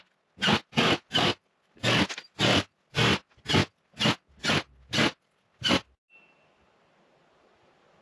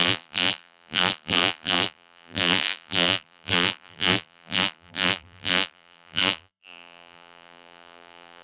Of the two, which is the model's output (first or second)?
second